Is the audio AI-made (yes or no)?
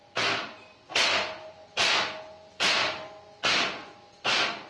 no